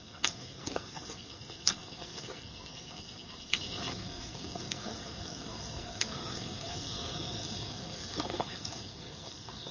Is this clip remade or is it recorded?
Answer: remade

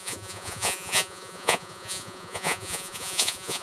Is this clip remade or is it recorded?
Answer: remade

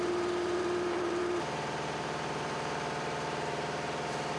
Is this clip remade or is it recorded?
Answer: remade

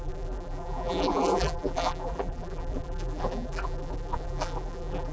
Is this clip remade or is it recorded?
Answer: remade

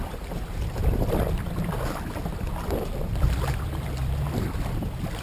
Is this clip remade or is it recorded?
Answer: remade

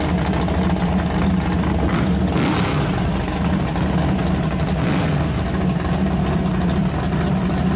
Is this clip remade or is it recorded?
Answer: recorded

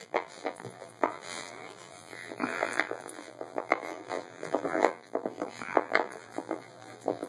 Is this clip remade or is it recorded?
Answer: remade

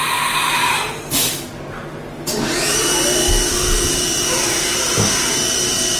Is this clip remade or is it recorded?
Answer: recorded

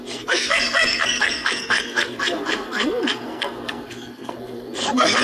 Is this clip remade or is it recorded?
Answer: remade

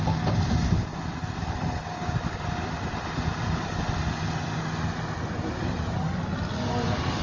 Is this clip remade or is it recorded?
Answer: recorded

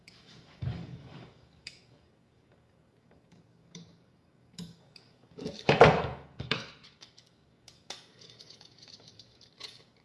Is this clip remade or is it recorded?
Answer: remade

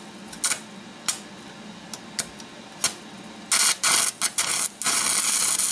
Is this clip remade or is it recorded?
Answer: recorded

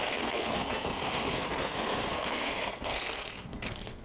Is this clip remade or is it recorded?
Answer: remade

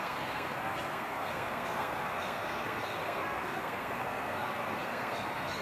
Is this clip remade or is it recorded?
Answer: remade